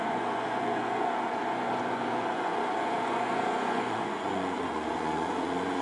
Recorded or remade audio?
remade